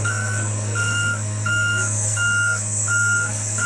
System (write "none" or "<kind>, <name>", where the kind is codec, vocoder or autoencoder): codec, SNAC